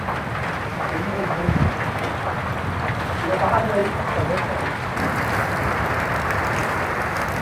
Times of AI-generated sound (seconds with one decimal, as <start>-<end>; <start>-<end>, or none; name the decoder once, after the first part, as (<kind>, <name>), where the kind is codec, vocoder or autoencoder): 0.7-1.6 (autoencoder, DAC-VAE)

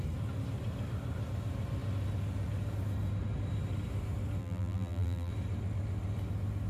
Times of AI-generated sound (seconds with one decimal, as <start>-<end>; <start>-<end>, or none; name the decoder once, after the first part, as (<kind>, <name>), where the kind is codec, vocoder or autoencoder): 4.4-5.3 (vocoder, BigVGAN v2)

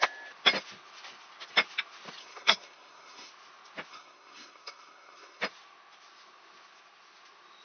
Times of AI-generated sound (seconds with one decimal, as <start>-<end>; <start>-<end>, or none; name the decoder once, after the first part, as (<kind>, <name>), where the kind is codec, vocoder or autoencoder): 2.2-3.3 (codec, SNAC); 3.9-5.4

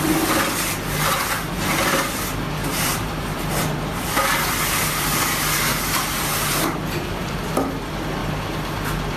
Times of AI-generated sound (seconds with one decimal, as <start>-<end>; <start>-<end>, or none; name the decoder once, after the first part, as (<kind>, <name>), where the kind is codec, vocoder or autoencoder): 2.6-3.5 (vocoder, BigVGAN v2); 5.7-7.4

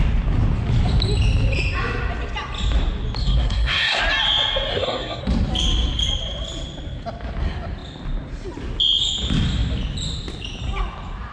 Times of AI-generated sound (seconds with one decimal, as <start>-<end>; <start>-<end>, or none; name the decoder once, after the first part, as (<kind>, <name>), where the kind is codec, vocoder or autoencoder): 3.2-4.0 (codec, SNAC); 4.7-5.2

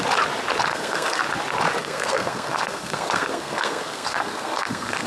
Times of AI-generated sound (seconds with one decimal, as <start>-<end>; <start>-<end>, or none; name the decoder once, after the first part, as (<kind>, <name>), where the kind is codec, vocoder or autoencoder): 0.7-1.2 (codec, SNAC); 1.8-5.1

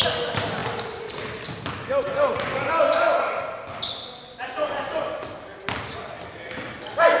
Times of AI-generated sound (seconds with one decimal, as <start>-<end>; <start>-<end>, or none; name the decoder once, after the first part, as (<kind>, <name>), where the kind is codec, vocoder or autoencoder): none

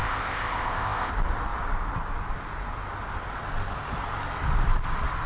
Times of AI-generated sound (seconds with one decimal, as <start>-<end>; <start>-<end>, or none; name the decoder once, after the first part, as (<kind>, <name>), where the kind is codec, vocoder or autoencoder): 0.0-1.1 (codec, ZipCodec)